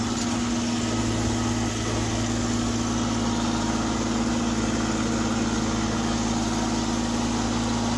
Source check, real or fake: real